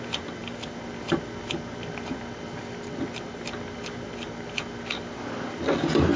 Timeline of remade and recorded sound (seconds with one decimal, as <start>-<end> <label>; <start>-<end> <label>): 0.0-6.2 recorded